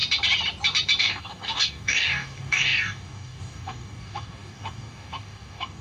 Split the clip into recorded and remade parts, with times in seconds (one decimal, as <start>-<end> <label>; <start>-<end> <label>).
0.0-1.0 recorded; 1.0-5.8 remade